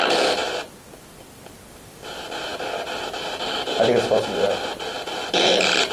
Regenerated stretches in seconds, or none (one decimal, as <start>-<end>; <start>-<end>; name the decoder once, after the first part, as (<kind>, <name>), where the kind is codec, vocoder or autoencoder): none